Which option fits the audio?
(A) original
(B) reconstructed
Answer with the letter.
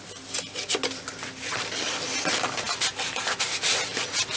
A